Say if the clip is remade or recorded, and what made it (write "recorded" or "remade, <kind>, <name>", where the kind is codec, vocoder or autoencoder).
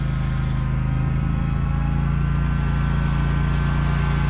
recorded